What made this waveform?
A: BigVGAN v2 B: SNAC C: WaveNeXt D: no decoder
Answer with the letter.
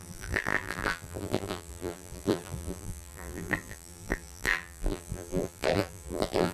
A